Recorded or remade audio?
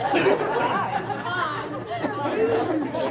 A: remade